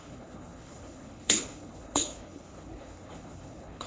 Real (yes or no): no